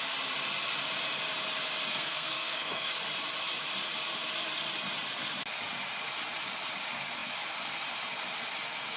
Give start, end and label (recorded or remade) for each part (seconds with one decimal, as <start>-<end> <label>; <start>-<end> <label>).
0.0-1.9 recorded; 1.9-2.9 remade; 2.9-9.0 recorded